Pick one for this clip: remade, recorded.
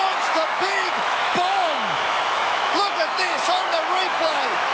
remade